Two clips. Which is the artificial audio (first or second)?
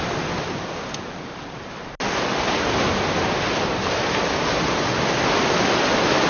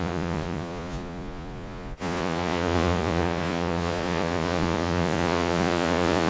second